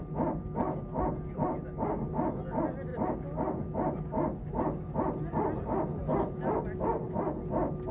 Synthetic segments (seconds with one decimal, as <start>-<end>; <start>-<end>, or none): none